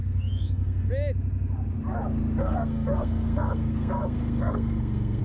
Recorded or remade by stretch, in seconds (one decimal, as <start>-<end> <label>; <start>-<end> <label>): 0.0-0.9 remade; 0.9-2.4 recorded; 2.4-5.2 remade